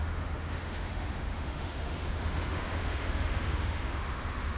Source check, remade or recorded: remade